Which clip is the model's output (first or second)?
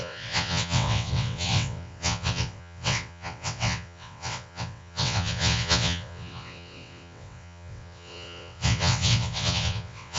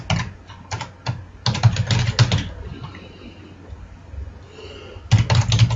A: first